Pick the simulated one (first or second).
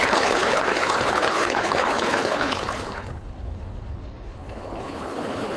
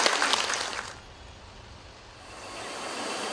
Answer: first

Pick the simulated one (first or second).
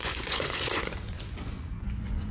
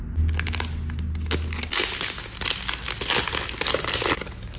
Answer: first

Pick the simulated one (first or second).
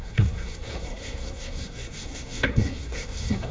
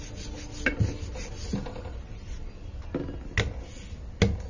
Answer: first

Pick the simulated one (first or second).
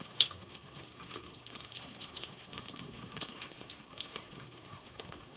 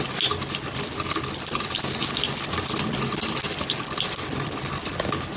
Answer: first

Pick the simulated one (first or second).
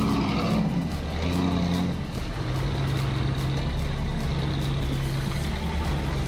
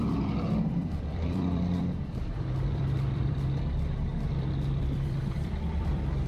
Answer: second